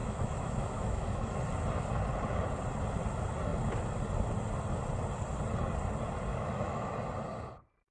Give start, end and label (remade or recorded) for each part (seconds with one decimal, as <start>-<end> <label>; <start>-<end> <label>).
0.0-1.4 remade; 1.4-6.3 recorded; 6.3-6.9 remade; 6.9-7.9 recorded